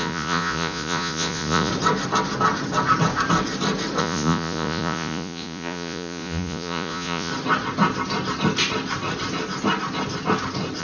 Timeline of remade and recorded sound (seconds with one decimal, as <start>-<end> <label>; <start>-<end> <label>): 0.0-1.7 remade; 1.7-4.0 recorded; 4.0-7.3 remade; 7.3-10.8 recorded